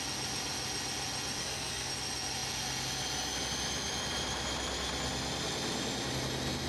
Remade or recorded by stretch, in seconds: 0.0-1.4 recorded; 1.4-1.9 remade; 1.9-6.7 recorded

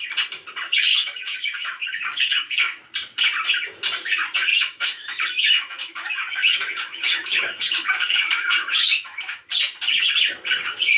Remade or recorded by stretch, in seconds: 0.0-0.9 recorded; 0.9-2.8 remade; 2.8-4.5 recorded; 4.5-9.5 remade; 9.5-11.0 recorded

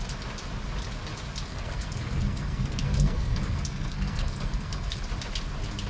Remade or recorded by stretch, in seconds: 0.0-1.5 recorded; 1.5-5.0 remade; 5.0-5.9 recorded

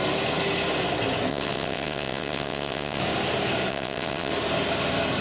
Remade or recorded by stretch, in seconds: 0.0-1.3 recorded; 1.3-3.0 remade; 3.0-3.7 recorded; 3.7-4.3 remade; 4.3-5.2 recorded

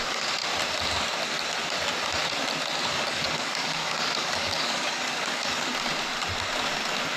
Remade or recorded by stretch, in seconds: 0.0-0.4 remade; 0.4-2.9 recorded; 2.9-5.7 remade; 5.7-7.2 recorded

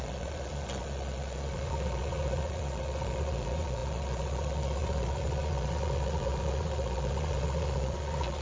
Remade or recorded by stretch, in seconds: 0.0-8.4 remade